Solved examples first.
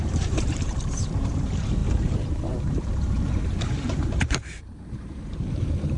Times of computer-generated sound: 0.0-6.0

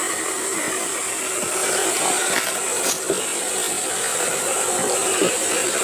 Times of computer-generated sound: 4.1-5.8

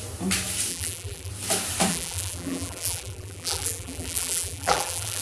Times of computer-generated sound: 0.7-1.3; 1.9-5.2

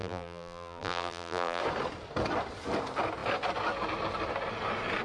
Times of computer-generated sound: 0.0-1.6

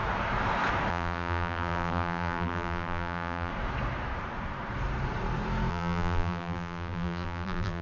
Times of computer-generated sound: 0.9-3.5; 5.7-7.8

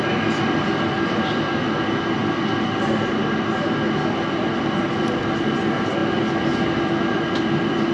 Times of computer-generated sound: none